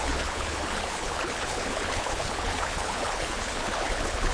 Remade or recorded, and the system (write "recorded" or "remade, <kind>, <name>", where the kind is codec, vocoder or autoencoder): remade, codec, HILCodec